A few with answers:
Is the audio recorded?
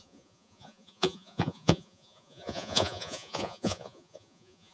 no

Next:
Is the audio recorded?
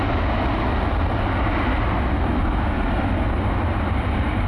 yes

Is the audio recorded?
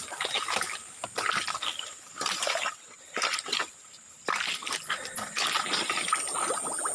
yes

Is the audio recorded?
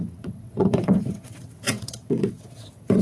no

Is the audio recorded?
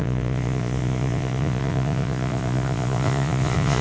no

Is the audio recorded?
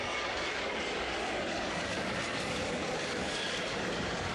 no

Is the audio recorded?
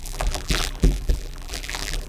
no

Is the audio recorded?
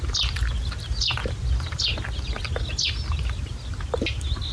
yes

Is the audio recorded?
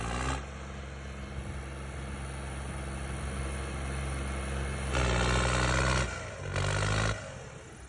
yes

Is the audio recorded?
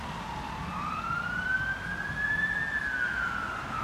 yes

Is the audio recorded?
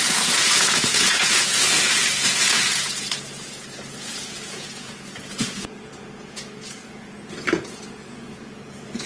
no